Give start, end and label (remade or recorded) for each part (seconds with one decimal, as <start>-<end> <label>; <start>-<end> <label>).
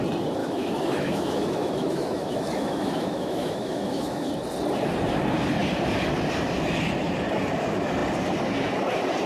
0.0-0.4 recorded; 0.4-4.3 remade; 4.3-9.3 recorded